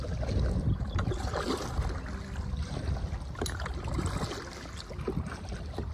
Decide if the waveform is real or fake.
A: real